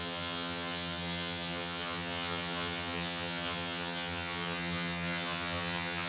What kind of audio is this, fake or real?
fake